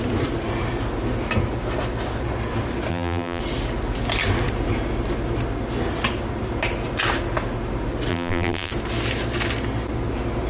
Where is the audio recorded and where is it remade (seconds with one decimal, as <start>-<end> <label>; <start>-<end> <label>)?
0.0-2.9 recorded; 2.9-3.4 remade; 3.4-8.1 recorded; 8.1-8.7 remade; 8.7-10.5 recorded